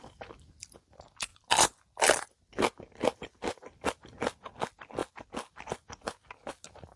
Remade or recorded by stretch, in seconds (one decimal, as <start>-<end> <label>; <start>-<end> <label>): 0.0-7.0 recorded